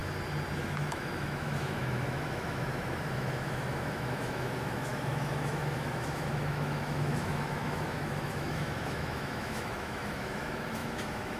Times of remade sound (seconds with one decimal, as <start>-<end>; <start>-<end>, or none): 0.6-11.4